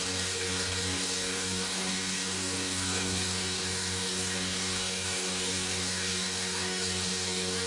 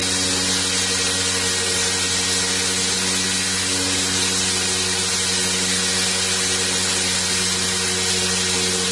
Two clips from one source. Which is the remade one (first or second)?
first